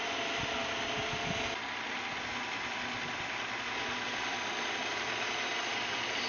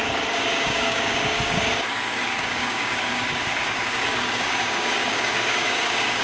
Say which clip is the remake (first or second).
second